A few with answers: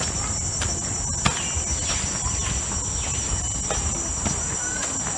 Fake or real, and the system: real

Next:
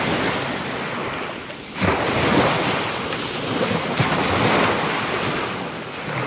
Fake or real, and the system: real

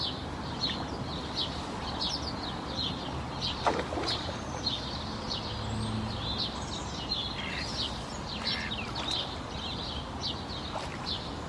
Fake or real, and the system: real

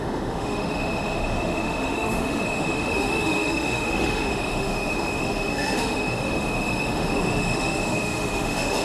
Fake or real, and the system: fake, autoencoder, DAC-VAE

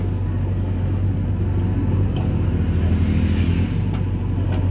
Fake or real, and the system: real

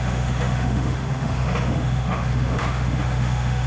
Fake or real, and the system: fake, autoencoder, DAC-VAE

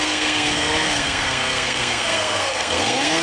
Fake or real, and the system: fake, codec, SNAC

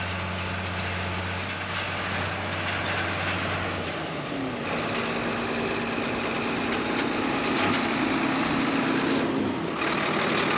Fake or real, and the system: real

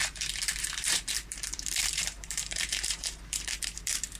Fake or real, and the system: fake, vocoder, BigVGAN v2